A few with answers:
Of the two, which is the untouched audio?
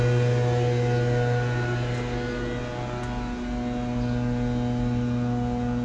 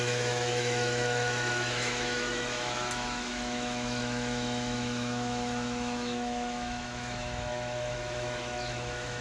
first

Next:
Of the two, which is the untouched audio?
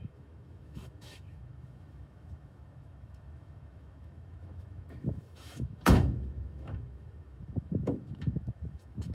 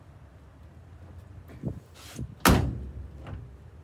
second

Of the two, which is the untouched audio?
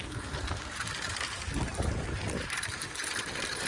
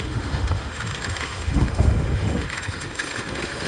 first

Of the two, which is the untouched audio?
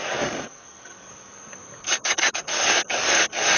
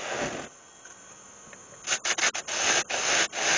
second